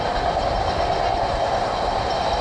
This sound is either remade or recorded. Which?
recorded